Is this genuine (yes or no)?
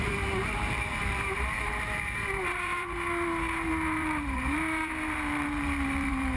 no